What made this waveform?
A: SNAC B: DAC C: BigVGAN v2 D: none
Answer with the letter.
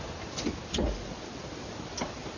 D